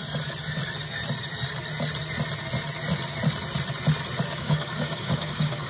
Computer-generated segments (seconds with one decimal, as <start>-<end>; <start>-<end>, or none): 4.3-5.7